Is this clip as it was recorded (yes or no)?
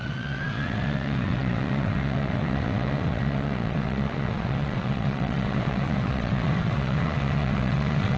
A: no